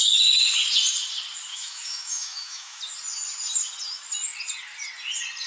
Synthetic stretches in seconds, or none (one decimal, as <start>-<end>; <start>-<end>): 1.5-2.8